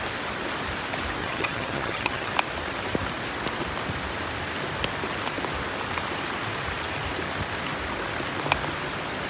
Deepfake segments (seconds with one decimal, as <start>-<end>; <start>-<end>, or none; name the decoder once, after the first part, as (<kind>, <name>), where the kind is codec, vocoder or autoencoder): 1.2-2.3 (vocoder, HiFi-GAN)